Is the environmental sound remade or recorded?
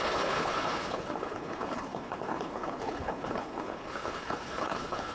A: remade